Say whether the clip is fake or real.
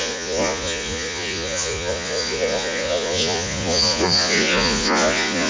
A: fake